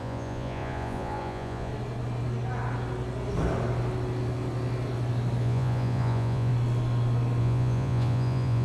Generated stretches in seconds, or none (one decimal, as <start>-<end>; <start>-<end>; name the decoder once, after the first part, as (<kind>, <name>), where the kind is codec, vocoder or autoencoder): 0.0-1.7 (vocoder, Vocos); 5.4-6.5; 7.4-8.6